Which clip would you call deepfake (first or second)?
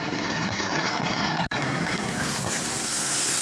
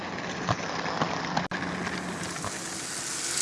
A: first